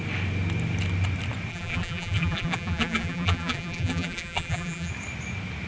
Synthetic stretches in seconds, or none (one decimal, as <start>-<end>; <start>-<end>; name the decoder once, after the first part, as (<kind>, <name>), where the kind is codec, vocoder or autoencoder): 1.5-4.9 (vocoder, BigVGAN v2)